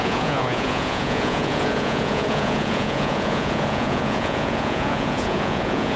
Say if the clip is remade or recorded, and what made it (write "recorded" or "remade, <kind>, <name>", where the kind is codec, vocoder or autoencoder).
remade, vocoder, Vocos